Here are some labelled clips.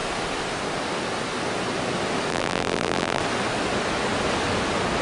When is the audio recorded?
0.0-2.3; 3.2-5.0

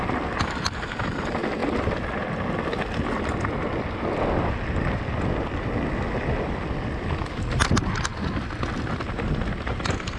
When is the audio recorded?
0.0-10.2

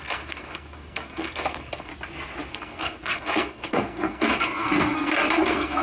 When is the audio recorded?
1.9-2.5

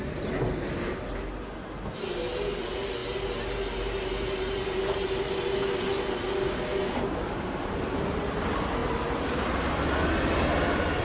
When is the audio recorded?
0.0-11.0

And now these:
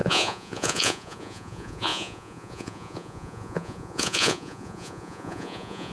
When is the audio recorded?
none

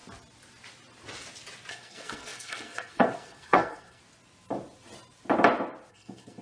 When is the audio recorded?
0.0-1.7; 4.0-5.9

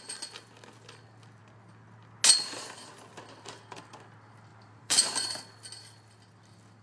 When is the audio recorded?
0.0-4.5; 5.0-6.8